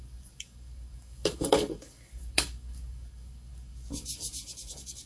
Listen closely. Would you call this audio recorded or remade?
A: remade